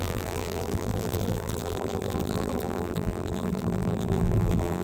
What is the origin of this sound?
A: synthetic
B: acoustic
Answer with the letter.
A